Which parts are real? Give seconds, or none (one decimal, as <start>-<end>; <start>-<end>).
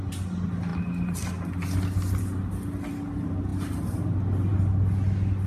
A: 0.0-5.5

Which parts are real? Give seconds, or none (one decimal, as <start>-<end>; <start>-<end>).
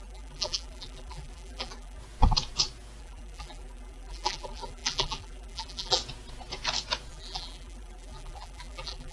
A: 2.0-3.0; 6.0-7.1